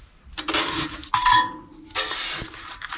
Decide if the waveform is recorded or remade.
recorded